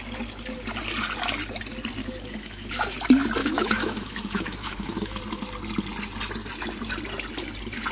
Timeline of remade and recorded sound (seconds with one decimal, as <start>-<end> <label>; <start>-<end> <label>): 0.0-2.0 recorded; 2.0-2.7 remade; 2.7-3.4 recorded; 3.4-5.2 remade; 5.2-7.9 recorded

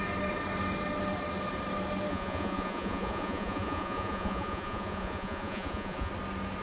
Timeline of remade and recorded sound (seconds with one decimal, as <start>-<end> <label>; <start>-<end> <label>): 0.0-2.1 recorded; 2.1-6.1 remade; 6.1-6.6 recorded

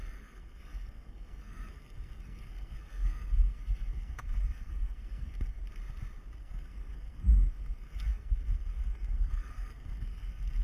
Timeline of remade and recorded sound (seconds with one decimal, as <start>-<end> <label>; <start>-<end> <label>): 0.0-5.6 remade; 5.6-6.4 recorded; 6.4-10.6 remade

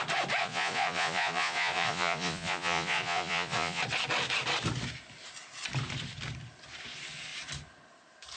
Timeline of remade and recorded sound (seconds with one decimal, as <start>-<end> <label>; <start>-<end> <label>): 0.0-0.4 recorded; 0.4-3.8 remade; 3.8-8.4 recorded

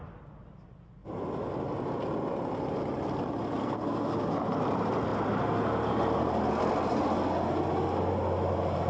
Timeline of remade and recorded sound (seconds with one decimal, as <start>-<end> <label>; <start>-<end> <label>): 0.0-3.6 recorded; 3.6-4.2 remade; 4.2-8.9 recorded

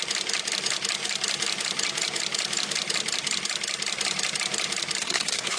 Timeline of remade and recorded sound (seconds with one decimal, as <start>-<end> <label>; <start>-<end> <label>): 0.0-5.0 recorded; 5.0-5.6 remade

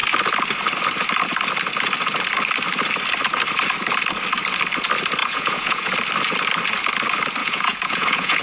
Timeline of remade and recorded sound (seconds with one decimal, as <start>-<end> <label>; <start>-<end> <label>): 0.0-5.2 recorded; 5.2-5.9 remade; 5.9-7.4 recorded; 7.4-8.4 remade

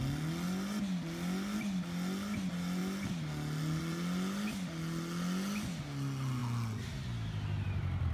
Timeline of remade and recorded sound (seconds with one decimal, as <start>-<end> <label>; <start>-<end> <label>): 0.0-8.1 recorded